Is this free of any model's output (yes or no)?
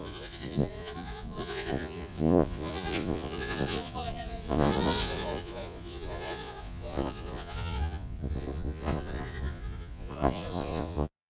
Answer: no